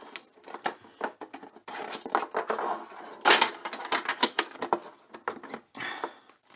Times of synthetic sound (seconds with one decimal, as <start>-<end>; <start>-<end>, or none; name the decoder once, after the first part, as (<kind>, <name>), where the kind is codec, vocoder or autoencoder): 4.1-4.6 (autoencoder, DAC-VAE)